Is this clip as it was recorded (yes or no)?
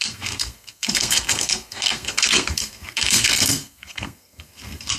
no